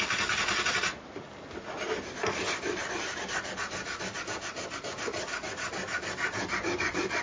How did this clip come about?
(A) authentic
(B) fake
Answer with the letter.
A